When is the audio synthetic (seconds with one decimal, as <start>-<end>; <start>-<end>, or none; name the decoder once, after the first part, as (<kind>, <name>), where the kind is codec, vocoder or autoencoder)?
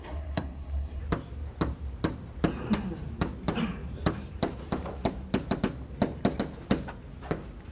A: 0.0-1.0 (codec, SNAC)